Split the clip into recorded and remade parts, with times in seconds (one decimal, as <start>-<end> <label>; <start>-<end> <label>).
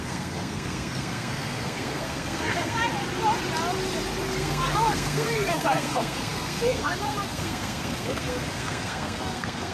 0.0-2.8 remade; 2.8-4.2 recorded; 4.2-9.7 remade